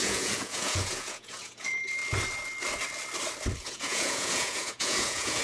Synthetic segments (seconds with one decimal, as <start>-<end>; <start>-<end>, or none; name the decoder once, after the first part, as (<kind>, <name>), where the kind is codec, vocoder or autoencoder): 0.0-2.0 (vocoder, Vocos); 3.6-5.4